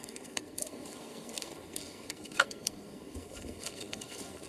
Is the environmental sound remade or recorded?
remade